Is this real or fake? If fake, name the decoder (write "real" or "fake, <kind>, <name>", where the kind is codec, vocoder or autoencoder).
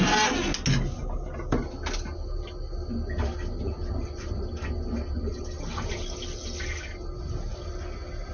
real